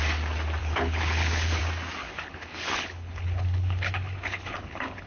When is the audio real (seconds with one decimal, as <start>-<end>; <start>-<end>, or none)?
0.0-0.6; 1.6-2.0